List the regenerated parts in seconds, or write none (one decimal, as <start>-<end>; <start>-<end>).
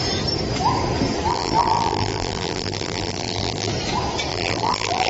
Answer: 1.3-3.7; 4.3-5.1